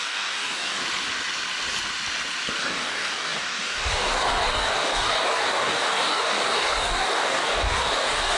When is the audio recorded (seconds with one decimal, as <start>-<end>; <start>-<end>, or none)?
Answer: 0.8-2.6